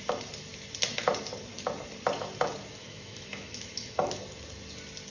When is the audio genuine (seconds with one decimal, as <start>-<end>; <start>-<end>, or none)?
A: 0.0-2.8; 4.2-5.1